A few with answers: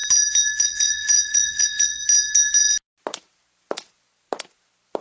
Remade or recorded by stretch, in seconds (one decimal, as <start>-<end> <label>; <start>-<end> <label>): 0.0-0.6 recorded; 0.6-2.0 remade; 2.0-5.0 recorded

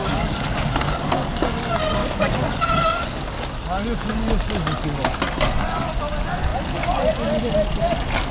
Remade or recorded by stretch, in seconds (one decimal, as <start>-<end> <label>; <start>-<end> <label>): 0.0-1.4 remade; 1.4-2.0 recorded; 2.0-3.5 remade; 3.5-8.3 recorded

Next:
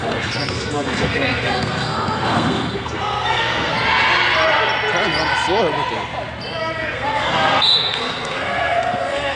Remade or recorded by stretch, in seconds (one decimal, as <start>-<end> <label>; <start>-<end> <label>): 0.0-3.7 remade; 3.7-6.8 recorded; 6.8-9.4 remade

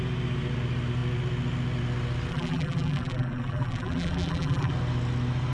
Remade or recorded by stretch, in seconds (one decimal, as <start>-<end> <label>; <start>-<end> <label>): 0.0-2.3 recorded; 2.3-4.7 remade; 4.7-5.5 recorded